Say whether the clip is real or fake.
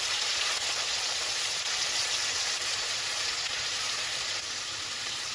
fake